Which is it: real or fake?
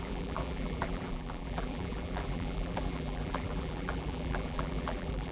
fake